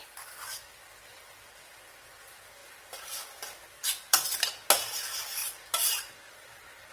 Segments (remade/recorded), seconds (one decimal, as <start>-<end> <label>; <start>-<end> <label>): 0.0-2.6 recorded; 2.6-4.4 remade; 4.4-5.4 recorded; 5.4-6.9 remade